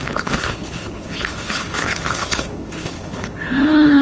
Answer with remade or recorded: remade